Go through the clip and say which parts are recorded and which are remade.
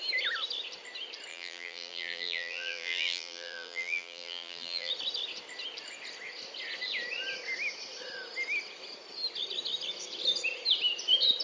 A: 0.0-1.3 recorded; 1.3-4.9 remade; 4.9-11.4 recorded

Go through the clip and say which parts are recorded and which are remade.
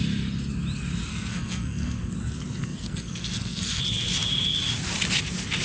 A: 0.0-1.1 recorded; 1.1-2.1 remade; 2.1-2.6 recorded; 2.6-3.8 remade; 3.8-5.6 recorded